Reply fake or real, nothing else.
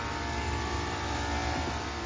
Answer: real